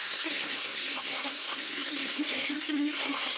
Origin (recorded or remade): remade